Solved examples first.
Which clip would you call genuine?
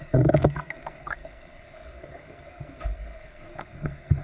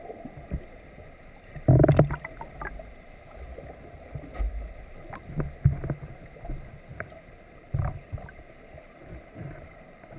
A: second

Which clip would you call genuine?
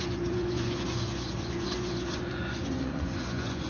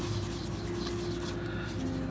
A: second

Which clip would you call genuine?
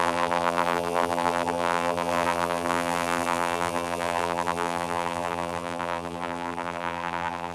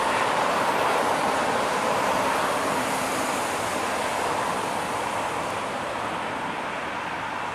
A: second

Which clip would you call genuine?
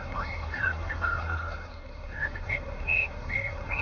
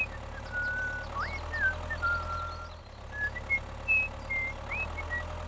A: second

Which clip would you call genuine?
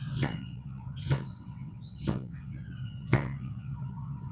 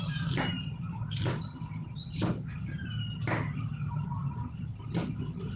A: second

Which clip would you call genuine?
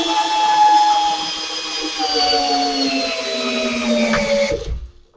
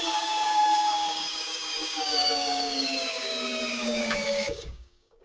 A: first